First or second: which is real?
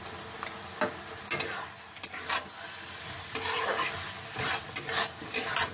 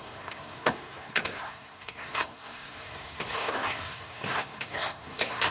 first